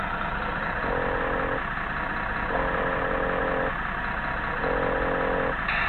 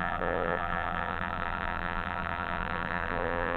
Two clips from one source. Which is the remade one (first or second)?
second